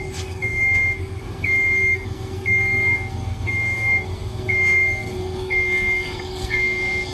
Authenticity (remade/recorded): remade